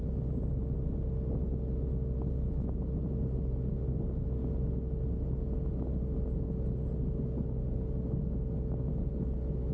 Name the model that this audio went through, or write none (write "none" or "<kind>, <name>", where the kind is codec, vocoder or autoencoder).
none